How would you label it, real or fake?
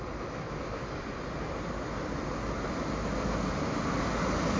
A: real